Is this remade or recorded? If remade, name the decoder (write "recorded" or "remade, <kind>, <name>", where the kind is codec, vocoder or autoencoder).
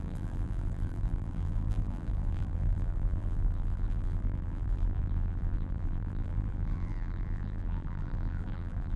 remade, vocoder, BigVGAN v2